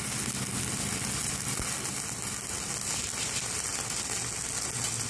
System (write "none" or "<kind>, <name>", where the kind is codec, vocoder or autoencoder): none